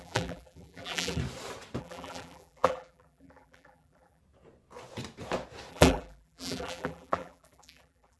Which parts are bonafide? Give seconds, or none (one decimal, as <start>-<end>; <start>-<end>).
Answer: 1.2-1.8; 4.2-5.7